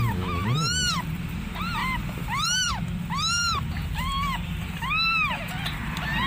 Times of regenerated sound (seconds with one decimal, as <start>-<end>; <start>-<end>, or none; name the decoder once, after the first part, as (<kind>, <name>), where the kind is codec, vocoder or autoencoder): 1.8-2.7 (vocoder, BigVGAN v2)